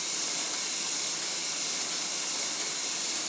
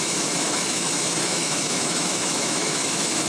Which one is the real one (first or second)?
first